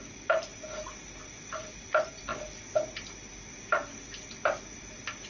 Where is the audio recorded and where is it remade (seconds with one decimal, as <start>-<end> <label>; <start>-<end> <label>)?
0.0-0.5 remade; 0.5-1.2 recorded; 1.2-2.3 remade; 2.3-3.3 recorded; 3.3-3.8 remade; 3.8-4.8 recorded; 4.8-5.3 remade